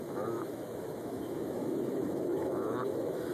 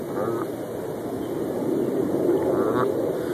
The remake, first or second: first